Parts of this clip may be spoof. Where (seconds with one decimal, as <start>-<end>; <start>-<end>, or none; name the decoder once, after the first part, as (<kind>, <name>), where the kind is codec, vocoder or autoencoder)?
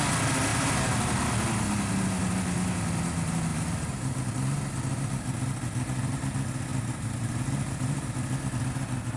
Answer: 0.5-1.2 (vocoder, BigVGAN v2); 3.5-4.2; 6.7-8.1